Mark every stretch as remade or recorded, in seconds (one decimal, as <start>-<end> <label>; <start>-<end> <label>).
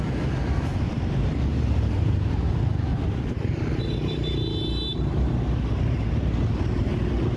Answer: 0.0-0.7 recorded; 0.7-2.5 remade; 2.5-2.9 recorded; 2.9-3.7 remade; 3.7-7.4 recorded